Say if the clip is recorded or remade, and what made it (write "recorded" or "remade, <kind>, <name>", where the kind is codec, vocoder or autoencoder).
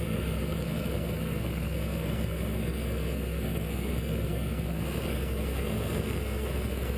remade, codec, SNAC